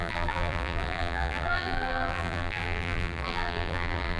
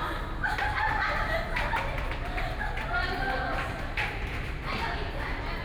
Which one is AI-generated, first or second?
first